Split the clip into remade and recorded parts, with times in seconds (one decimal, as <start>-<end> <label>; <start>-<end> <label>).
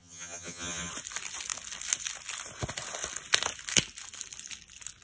0.0-0.9 remade; 0.9-5.0 recorded